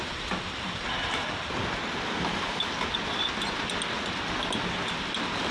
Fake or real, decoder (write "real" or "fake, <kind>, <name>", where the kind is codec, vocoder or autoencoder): real